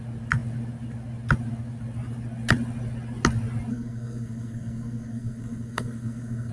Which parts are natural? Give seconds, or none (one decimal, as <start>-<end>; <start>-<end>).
0.0-3.7